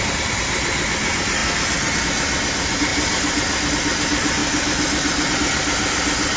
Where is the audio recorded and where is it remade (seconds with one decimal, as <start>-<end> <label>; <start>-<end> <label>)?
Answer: 0.0-2.9 recorded; 2.9-3.7 remade; 3.7-6.4 recorded